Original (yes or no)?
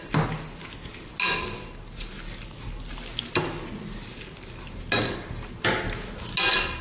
yes